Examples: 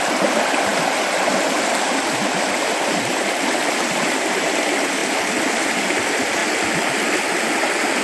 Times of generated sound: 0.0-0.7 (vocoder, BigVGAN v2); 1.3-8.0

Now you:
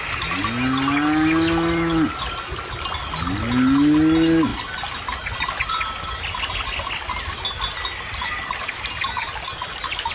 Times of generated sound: none